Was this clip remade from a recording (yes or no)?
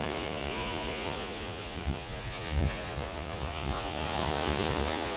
yes